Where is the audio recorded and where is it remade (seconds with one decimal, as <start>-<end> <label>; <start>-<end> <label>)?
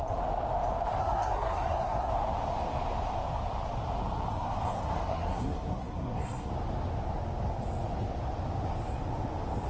0.0-1.0 recorded; 1.0-2.1 remade; 2.1-4.3 recorded; 4.3-6.5 remade; 6.5-9.7 recorded